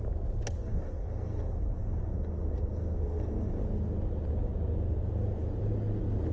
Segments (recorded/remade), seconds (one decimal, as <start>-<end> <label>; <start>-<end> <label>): 0.0-0.6 recorded; 0.6-3.6 remade; 3.6-6.3 recorded